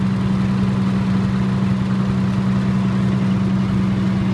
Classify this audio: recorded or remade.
recorded